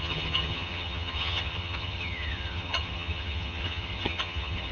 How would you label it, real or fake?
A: fake